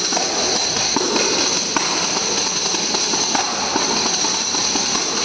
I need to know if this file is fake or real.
real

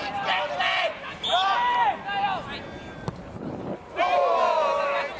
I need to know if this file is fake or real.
real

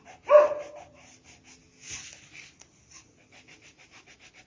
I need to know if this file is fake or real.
real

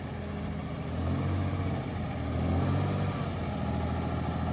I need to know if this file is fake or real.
real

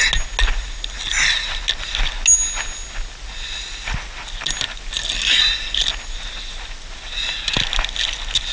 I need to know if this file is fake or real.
real